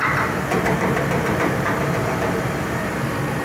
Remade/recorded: remade